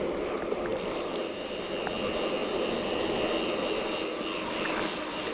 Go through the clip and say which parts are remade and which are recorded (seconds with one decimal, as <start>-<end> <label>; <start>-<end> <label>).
0.0-0.7 recorded; 0.7-1.8 remade; 1.8-5.3 recorded